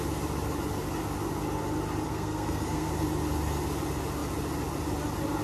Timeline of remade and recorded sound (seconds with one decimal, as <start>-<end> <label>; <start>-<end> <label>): 0.0-2.1 recorded; 2.1-2.9 remade; 2.9-5.4 recorded